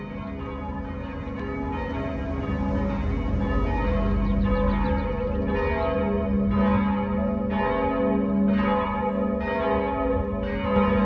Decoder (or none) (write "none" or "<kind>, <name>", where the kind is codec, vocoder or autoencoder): none